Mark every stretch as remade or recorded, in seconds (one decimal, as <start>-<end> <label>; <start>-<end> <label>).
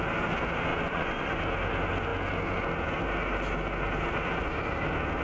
0.0-0.7 recorded; 0.7-1.4 remade; 1.4-5.2 recorded